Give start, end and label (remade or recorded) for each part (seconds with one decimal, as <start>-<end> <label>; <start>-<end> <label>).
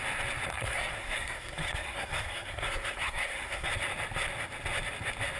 0.0-0.5 recorded; 0.5-3.7 remade; 3.7-5.4 recorded